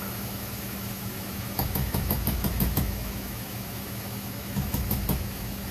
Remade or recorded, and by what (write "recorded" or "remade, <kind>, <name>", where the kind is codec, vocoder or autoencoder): remade, autoencoder, DAC-VAE